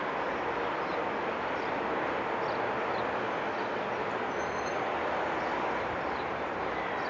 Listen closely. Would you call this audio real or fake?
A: real